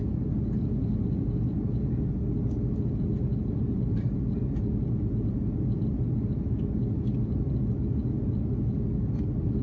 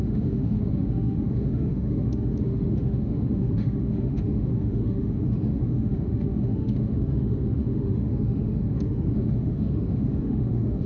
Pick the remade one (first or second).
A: second